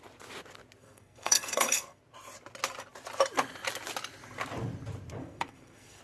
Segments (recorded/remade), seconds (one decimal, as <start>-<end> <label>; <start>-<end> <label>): 0.0-0.8 recorded; 0.8-2.0 remade; 2.0-5.2 recorded; 5.2-6.0 remade